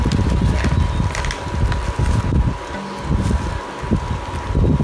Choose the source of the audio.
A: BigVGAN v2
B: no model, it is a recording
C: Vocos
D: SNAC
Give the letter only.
B